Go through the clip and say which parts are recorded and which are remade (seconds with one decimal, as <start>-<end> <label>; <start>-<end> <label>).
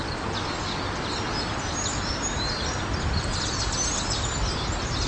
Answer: 0.0-5.1 recorded